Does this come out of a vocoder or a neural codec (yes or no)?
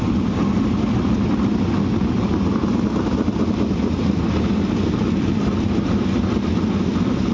no